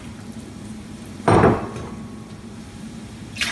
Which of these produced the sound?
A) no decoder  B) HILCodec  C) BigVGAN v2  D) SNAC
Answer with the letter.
C